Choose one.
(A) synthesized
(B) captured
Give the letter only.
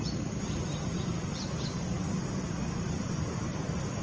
B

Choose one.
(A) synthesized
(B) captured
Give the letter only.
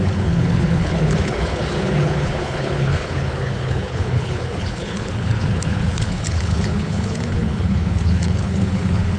A